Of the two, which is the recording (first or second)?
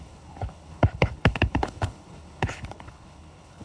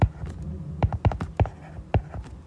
second